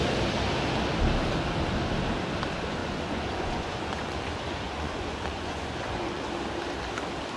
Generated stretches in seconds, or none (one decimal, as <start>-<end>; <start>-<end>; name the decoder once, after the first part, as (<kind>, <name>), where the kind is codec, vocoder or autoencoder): 2.8-6.3 (vocoder, Vocos)

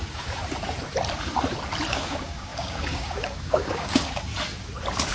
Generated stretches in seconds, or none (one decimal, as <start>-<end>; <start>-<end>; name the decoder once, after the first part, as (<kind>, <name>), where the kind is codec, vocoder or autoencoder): 0.0-0.4 (codec, DAC); 1.9-4.3

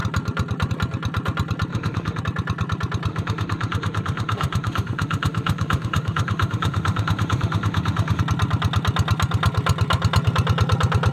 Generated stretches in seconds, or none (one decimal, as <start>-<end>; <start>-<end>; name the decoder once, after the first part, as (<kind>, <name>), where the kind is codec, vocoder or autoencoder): 1.7-2.2 (autoencoder, DAC-VAE); 3.1-8.2

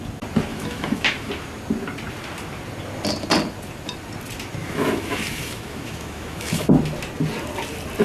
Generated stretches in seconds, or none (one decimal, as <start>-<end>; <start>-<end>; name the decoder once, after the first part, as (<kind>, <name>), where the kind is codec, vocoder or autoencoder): 0.5-1.3 (autoencoder, DAC-VAE); 4.6-6.7

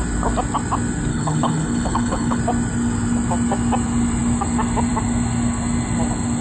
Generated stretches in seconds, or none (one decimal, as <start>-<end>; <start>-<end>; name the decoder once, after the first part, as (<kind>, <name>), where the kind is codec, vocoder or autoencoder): 1.1-2.4 (codec, HILCodec)